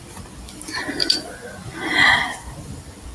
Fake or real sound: fake